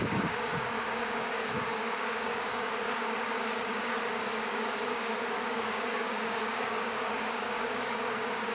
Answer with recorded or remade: remade